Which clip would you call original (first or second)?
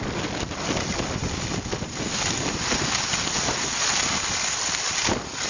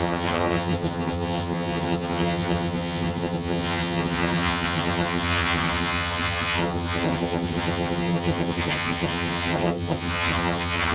first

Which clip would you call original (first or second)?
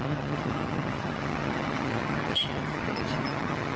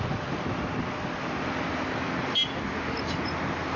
second